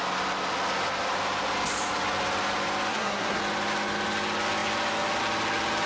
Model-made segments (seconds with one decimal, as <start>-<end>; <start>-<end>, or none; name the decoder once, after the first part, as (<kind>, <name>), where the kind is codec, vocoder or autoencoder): 2.9-3.4 (codec, SNAC)